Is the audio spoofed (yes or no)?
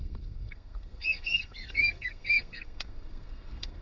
yes